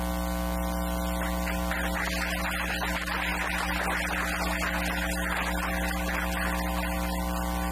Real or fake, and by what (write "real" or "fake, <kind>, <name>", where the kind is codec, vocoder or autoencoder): real